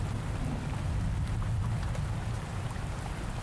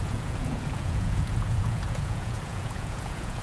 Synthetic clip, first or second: second